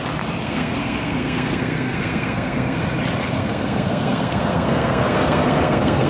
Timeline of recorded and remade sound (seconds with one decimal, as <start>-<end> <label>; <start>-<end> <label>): 0.0-0.4 recorded; 0.4-2.8 remade; 2.8-3.4 recorded; 3.4-6.1 remade